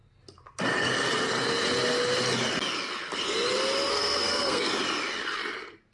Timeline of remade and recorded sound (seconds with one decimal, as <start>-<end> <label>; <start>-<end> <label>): 0.0-3.9 recorded; 3.9-4.7 remade; 4.7-5.9 recorded